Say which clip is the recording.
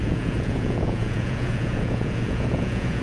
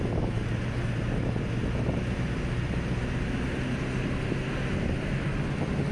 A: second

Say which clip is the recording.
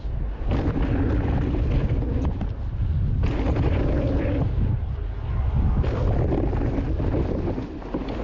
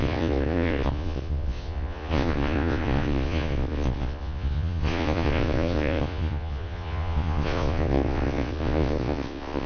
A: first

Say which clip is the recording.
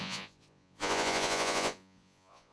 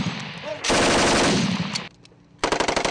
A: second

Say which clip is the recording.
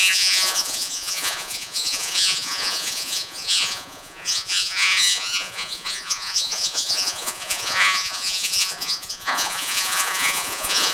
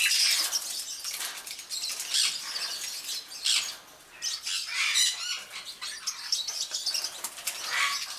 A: second